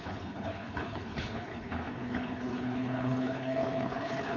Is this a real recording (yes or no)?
no